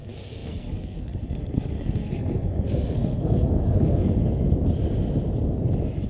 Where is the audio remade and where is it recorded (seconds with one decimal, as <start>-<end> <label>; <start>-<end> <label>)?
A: 0.0-4.2 remade; 4.2-6.1 recorded